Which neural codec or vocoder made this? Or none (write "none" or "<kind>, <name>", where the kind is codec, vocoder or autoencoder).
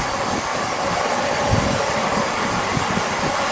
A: none